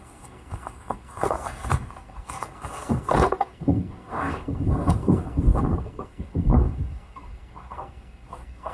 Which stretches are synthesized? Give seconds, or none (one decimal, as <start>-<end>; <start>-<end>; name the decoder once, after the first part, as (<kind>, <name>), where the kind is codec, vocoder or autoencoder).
0.0-8.7 (codec, SNAC)